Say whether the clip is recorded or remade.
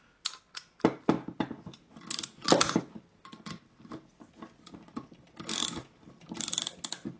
recorded